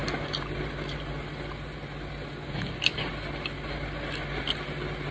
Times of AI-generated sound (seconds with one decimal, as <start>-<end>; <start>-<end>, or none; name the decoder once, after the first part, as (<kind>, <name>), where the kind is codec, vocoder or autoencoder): none